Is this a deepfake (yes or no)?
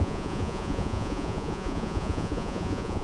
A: yes